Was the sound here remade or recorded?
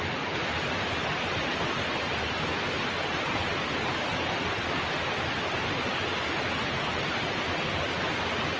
recorded